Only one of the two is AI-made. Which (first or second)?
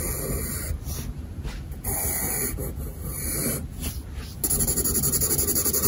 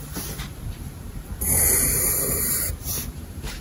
second